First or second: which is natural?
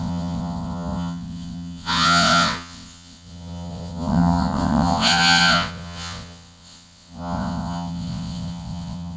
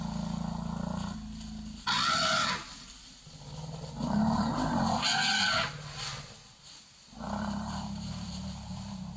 second